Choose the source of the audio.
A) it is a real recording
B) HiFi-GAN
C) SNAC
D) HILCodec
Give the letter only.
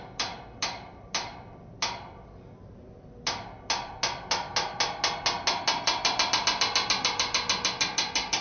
A